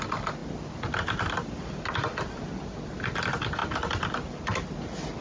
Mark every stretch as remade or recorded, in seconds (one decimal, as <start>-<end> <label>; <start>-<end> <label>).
0.0-5.2 recorded